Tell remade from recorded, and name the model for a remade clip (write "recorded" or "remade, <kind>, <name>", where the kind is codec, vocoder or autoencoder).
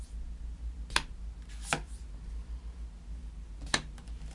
recorded